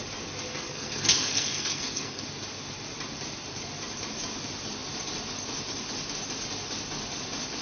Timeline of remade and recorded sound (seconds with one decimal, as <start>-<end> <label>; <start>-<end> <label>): 0.0-0.5 recorded; 0.5-2.2 remade; 2.2-7.6 recorded